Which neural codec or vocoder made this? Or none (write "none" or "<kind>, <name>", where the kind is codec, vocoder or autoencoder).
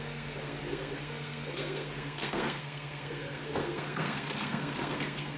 codec, SNAC